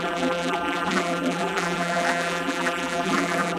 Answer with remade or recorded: remade